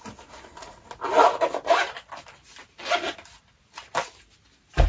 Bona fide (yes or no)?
yes